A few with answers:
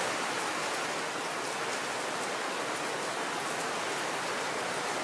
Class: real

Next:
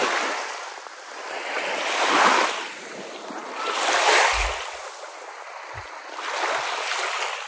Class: real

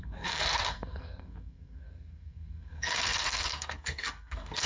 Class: fake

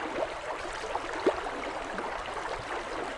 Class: real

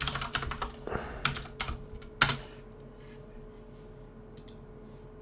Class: real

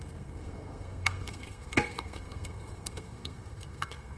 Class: fake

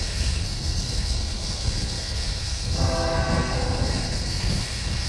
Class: fake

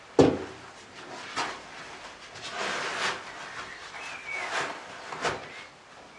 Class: real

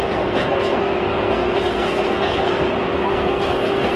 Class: fake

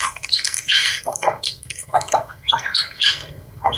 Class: fake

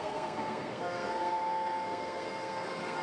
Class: fake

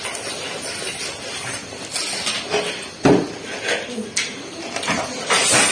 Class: real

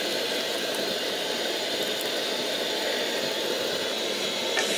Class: real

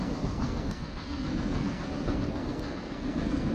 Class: fake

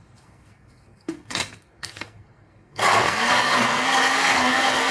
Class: fake